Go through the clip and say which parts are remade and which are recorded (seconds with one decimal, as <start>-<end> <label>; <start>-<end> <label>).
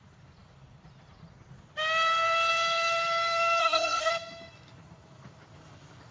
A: 0.0-3.6 recorded; 3.6-4.1 remade; 4.1-6.1 recorded